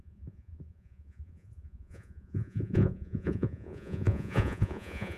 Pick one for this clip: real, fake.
fake